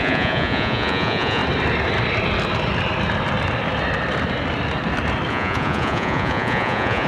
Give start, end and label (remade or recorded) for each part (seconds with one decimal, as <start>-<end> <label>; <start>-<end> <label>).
0.0-1.4 remade; 1.4-5.3 recorded; 5.3-7.1 remade